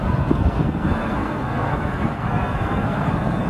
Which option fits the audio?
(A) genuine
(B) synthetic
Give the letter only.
B